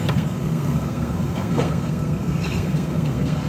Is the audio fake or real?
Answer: fake